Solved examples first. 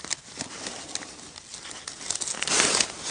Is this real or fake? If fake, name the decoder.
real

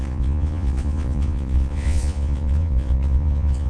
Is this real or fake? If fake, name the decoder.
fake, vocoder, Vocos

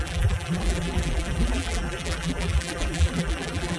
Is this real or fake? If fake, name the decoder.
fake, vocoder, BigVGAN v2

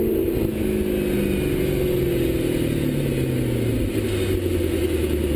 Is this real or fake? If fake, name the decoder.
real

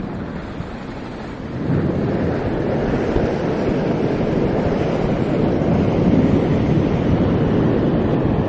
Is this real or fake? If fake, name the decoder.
real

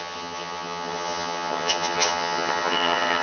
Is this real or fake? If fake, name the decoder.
fake, vocoder, HiFi-GAN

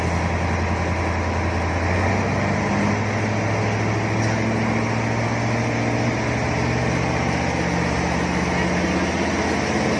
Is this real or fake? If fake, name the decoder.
real